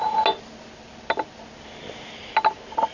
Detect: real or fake real